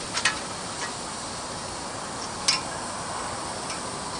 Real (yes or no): yes